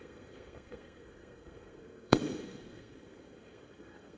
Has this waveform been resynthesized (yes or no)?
yes